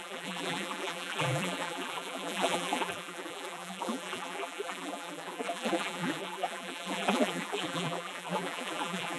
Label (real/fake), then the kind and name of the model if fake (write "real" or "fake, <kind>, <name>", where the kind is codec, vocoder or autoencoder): fake, vocoder, BigVGAN v2